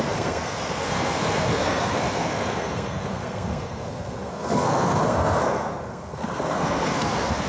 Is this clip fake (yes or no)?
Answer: yes